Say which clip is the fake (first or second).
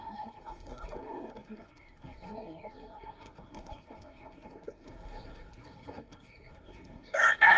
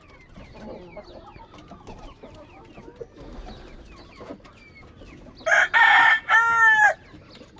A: first